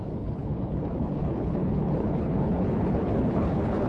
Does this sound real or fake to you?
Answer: fake